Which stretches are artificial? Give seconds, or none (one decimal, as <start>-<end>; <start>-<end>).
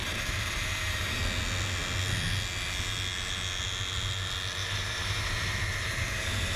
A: 0.0-1.2; 4.6-6.6